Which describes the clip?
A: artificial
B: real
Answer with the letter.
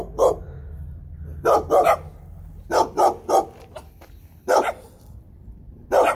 B